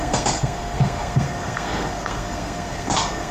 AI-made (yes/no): yes